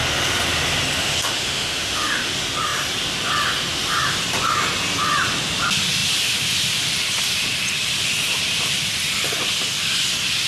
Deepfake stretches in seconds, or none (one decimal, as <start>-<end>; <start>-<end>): 1.0-2.3